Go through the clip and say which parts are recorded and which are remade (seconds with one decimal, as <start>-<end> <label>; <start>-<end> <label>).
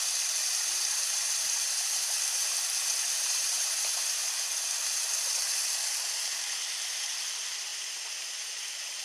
0.0-0.4 recorded; 0.4-4.7 remade; 4.7-9.0 recorded